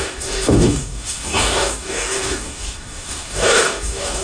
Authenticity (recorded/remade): remade